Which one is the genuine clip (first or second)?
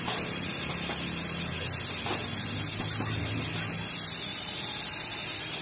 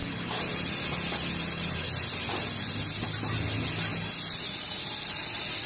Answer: second